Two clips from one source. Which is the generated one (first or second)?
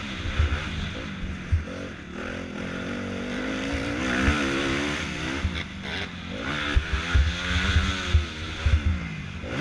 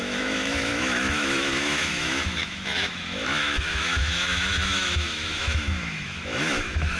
second